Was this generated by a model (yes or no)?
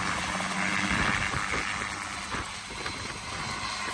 no